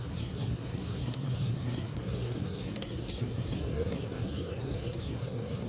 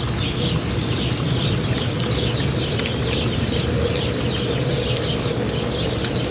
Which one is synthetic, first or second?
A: first